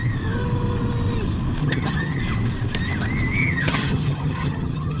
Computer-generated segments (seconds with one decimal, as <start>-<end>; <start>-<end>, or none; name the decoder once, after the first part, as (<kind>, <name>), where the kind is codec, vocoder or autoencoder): 1.6-2.2 (vocoder, HiFi-GAN); 3.4-5.0